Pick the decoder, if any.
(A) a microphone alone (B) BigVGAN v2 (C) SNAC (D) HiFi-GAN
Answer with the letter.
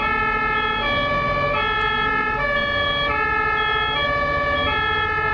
A